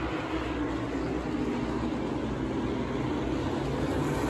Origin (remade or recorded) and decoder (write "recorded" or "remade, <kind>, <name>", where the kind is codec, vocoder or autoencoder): recorded